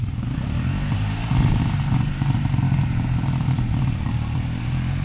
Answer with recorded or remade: remade